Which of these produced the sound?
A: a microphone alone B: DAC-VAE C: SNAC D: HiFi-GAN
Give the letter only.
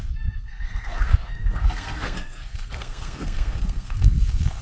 C